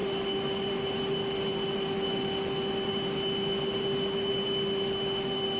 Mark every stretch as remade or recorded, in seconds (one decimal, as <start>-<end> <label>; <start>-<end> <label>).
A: 0.0-5.6 recorded